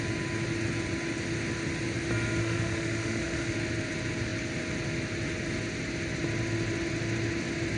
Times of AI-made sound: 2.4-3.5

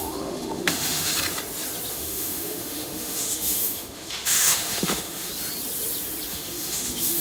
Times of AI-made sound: 0.0-1.1; 1.9-5.3; 6.3-7.2

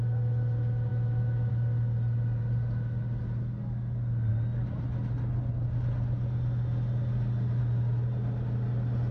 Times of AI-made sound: 0.9-1.5

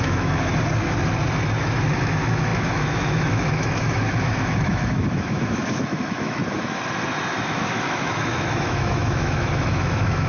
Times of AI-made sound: 0.0-0.5; 1.6-6.4; 7.4-10.3

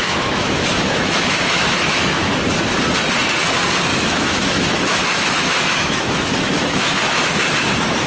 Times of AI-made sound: 0.0-2.3; 3.9-7.4

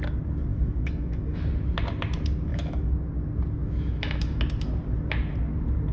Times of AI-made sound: 0.5-1.4; 2.5-3.1; 3.6-4.4

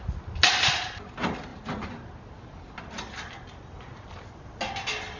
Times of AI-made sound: none

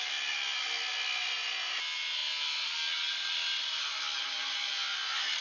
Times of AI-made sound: none